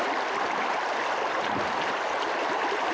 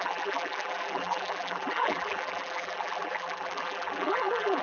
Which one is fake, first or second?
second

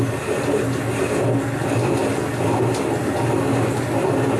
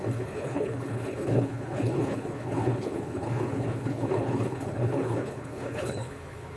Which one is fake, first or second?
second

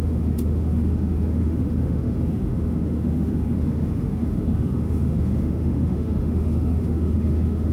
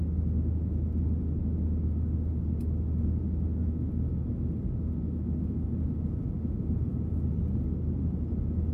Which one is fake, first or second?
first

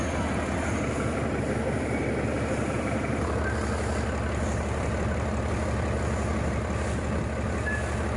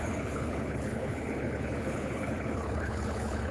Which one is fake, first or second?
second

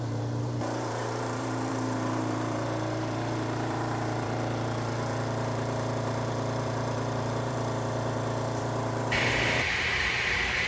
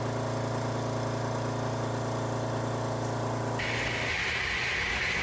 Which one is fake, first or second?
first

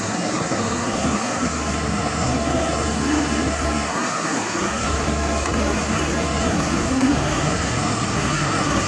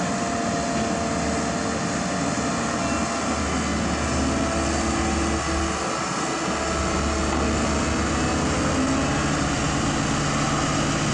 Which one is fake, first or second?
first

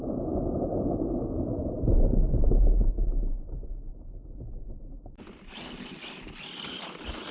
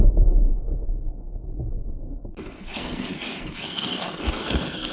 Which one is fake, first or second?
second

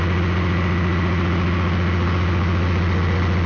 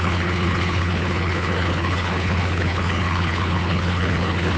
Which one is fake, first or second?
second